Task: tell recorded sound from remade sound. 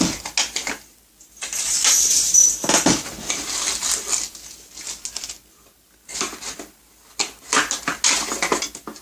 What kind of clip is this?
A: recorded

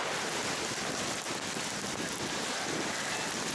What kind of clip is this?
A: recorded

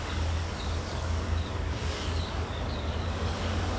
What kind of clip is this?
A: remade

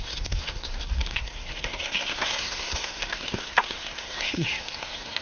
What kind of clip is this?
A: remade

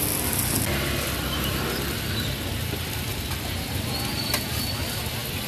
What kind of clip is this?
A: recorded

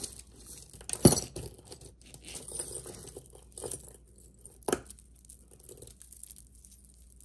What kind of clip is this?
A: recorded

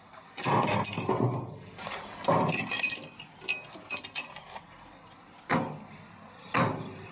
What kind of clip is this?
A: recorded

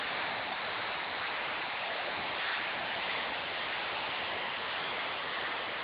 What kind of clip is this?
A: remade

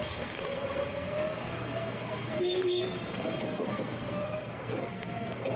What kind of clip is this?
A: remade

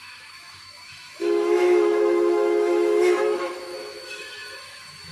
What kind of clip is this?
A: remade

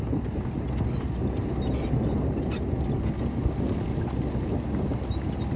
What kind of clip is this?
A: recorded